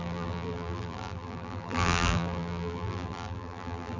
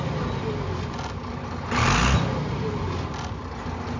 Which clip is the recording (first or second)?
second